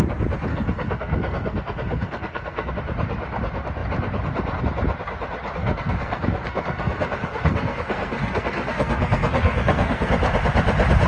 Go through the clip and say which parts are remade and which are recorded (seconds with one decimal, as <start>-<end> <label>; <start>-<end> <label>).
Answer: 0.0-0.5 recorded; 0.5-2.7 remade; 2.7-5.6 recorded; 5.6-10.1 remade; 10.1-11.1 recorded